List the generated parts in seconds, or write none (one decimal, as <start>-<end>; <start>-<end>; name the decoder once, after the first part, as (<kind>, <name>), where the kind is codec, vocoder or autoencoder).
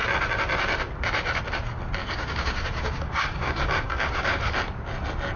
2.0-4.6 (codec, DAC)